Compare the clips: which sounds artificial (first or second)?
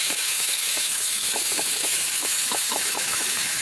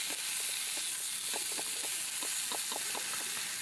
first